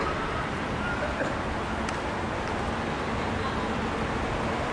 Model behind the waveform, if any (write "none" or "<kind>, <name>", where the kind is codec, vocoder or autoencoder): none